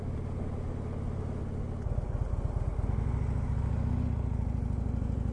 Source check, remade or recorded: recorded